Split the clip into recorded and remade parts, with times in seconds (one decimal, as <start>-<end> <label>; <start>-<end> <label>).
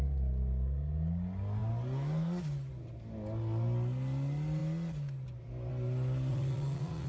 0.0-6.3 recorded; 6.3-7.1 remade